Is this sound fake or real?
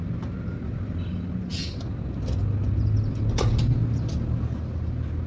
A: real